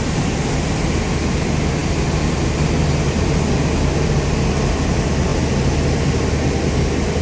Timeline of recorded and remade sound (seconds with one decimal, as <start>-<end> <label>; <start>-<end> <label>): 0.0-7.2 recorded